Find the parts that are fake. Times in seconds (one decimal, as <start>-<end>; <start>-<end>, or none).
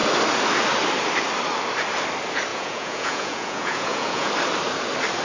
2.5-4.3